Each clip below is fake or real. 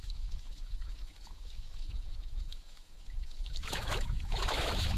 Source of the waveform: fake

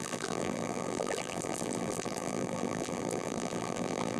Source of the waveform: fake